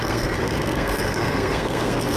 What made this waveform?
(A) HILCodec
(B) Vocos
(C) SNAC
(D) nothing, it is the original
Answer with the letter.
C